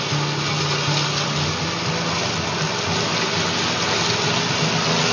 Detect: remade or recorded recorded